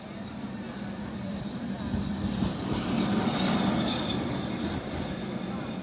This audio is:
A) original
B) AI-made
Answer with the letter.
A